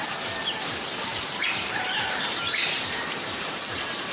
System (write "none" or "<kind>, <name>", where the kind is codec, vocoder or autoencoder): vocoder, BigVGAN v2